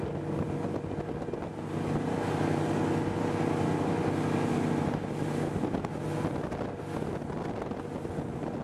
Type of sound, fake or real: real